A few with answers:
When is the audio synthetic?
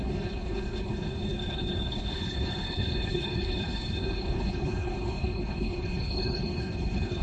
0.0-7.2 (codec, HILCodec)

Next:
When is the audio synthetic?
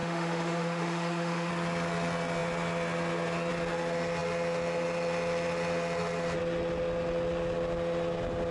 0.0-1.5 (autoencoder, DAC-VAE)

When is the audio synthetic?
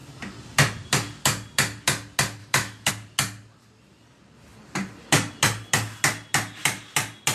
2.4-2.9 (autoencoder, DAC-VAE)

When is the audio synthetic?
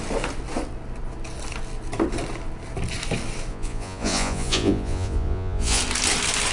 3.5-5.8 (vocoder, Vocos)